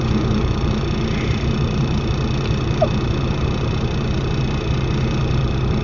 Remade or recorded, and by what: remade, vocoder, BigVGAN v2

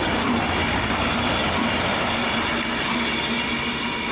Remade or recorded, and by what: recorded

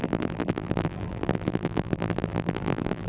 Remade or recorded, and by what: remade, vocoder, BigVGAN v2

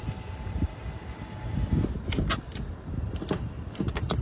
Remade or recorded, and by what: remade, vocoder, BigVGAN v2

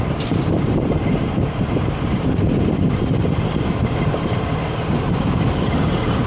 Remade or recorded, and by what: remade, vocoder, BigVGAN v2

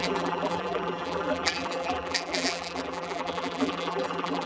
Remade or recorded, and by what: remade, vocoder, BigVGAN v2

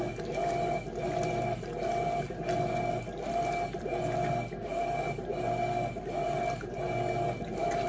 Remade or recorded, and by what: recorded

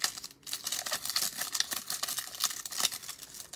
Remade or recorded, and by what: recorded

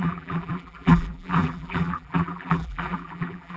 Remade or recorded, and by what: remade, vocoder, BigVGAN v2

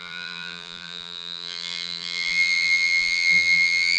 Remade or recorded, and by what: remade, vocoder, BigVGAN v2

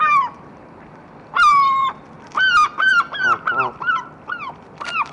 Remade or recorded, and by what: remade, vocoder, BigVGAN v2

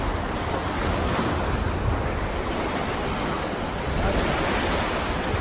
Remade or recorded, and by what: recorded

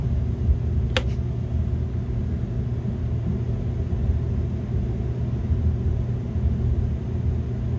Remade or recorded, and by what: recorded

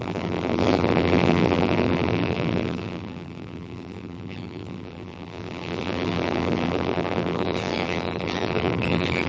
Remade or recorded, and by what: remade, vocoder, BigVGAN v2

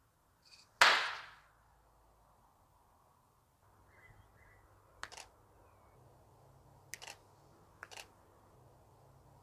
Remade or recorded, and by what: recorded